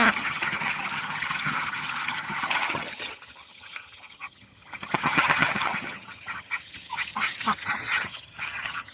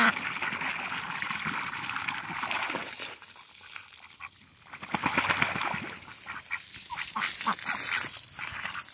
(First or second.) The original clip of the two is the second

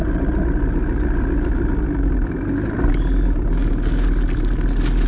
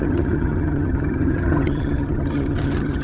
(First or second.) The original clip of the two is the first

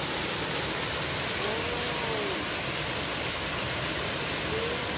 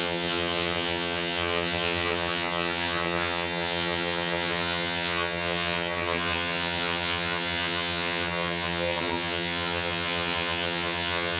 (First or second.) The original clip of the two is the first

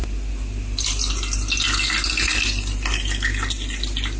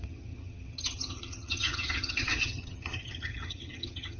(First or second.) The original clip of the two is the first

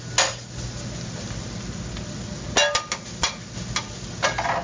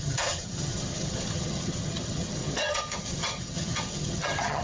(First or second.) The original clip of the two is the first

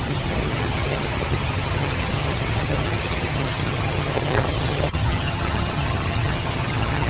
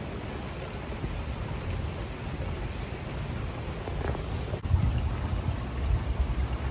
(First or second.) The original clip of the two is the second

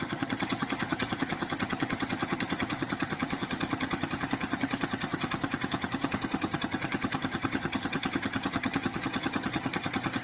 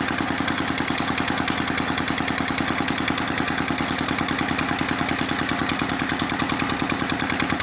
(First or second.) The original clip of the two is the second